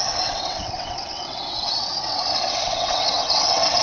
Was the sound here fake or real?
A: fake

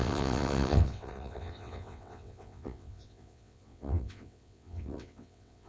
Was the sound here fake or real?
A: fake